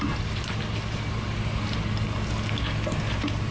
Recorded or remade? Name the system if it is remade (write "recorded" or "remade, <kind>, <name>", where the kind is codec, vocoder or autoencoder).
recorded